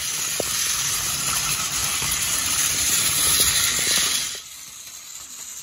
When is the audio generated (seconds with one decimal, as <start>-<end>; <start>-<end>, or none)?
none

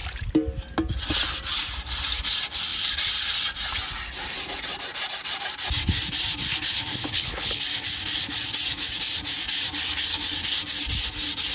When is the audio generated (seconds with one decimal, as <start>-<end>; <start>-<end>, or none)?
6.9-7.6

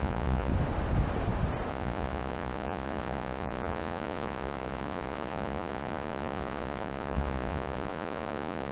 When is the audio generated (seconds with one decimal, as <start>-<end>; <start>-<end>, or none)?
0.0-0.5; 1.7-8.7